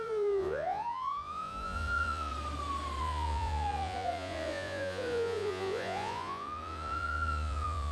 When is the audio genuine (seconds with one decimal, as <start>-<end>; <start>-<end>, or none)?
2.3-3.0